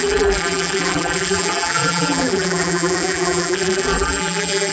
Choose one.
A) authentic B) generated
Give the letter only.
B